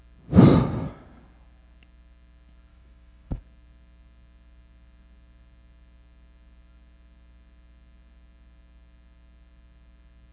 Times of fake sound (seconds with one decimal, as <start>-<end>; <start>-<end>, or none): 2.7-3.4